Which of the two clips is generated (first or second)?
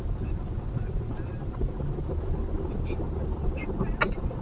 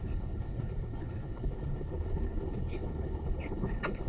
second